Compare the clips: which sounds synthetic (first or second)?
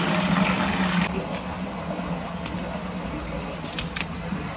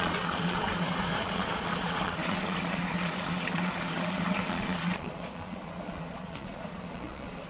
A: second